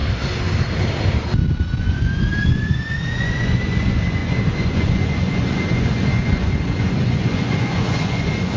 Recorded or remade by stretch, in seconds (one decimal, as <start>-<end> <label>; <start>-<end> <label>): 0.0-1.8 recorded; 1.8-8.6 remade